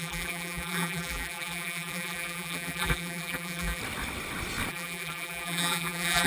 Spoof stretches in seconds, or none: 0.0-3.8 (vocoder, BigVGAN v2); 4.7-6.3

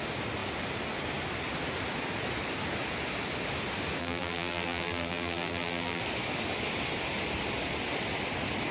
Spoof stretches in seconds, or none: 4.0-6.0 (vocoder, BigVGAN v2)

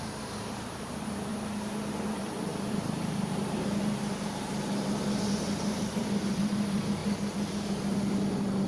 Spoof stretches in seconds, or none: 0.0-1.3 (vocoder, BigVGAN v2); 1.9-7.0; 8.1-8.7

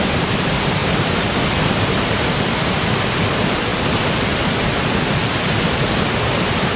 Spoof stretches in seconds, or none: 0.0-3.7 (vocoder, BigVGAN v2); 5.4-6.8

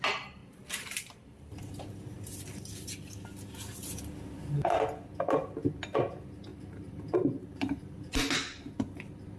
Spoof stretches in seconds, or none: 0.4-1.8 (vocoder, BigVGAN v2); 6.5-8.1

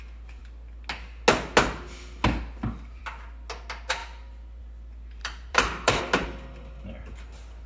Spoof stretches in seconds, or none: 5.2-6.0 (vocoder, BigVGAN v2)

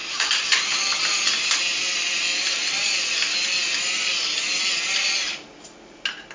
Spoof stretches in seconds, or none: 0.0-1.5 (vocoder, BigVGAN v2)